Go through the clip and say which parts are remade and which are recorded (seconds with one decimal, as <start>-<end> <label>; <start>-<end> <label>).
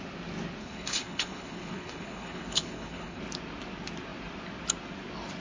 0.0-0.6 recorded; 0.6-3.2 remade; 3.2-5.4 recorded